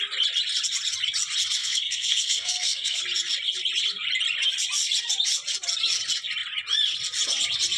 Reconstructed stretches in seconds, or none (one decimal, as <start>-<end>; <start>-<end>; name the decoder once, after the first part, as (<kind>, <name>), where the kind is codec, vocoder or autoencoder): 1.6-3.0 (codec, SNAC)